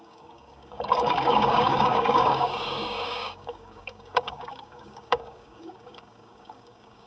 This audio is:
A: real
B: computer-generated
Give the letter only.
B